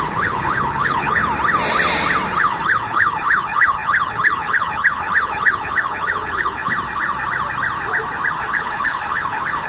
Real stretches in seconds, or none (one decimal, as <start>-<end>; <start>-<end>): 1.2-2.4; 6.6-8.3